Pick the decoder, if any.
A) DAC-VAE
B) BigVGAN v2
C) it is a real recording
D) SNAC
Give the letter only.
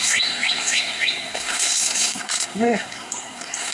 D